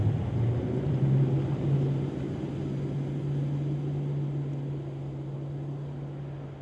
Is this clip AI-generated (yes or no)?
no